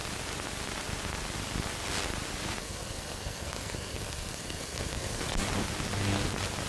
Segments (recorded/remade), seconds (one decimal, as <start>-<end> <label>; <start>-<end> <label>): 0.0-2.6 recorded; 2.6-5.4 remade; 5.4-6.7 recorded